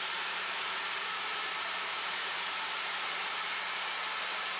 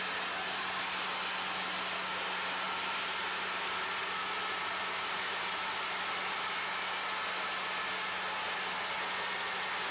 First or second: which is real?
second